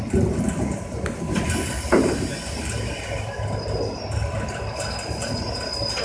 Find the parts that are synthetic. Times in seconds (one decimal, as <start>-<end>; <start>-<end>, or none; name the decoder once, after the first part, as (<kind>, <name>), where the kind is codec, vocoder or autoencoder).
none